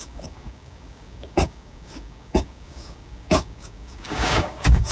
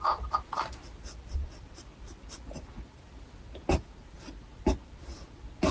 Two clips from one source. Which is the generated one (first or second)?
first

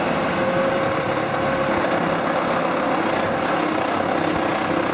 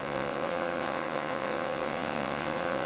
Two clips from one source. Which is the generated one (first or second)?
second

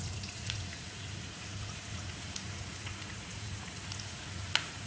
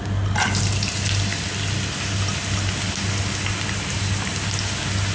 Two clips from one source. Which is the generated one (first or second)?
first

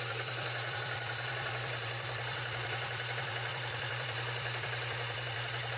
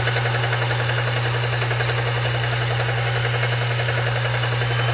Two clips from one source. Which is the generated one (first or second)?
first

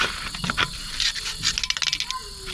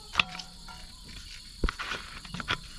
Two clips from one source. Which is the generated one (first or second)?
second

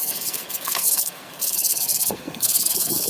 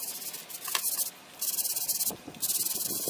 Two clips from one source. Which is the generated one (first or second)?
first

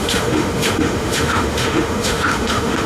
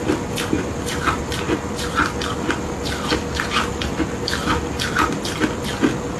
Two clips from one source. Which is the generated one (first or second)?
first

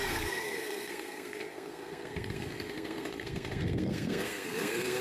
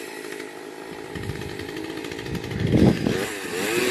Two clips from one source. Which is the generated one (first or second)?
first